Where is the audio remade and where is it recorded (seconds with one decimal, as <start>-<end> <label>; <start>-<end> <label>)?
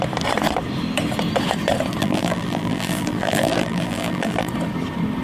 0.0-2.0 recorded; 2.0-4.5 remade; 4.5-5.2 recorded